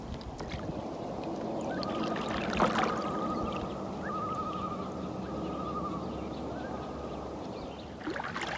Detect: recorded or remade recorded